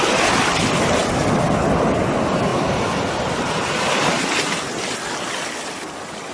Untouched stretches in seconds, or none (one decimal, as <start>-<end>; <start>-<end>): 0.0-1.0; 1.7-2.5; 3.5-6.3